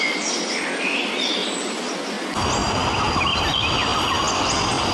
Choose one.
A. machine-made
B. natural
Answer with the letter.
B